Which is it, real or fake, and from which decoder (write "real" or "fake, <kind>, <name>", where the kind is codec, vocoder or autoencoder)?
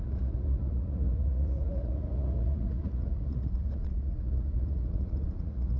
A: fake, vocoder, Vocos